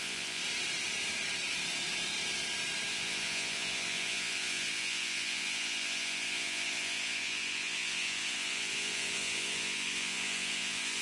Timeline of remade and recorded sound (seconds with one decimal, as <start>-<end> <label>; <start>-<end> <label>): 0.0-0.4 remade; 0.4-2.9 recorded; 2.9-11.0 remade